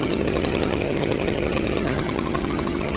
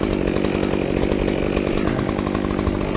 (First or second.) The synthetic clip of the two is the first